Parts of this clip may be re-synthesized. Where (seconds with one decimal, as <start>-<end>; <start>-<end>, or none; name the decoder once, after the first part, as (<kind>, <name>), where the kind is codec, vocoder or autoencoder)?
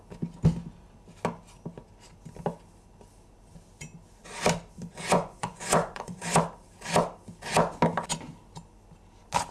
4.9-6.2 (vocoder, Vocos)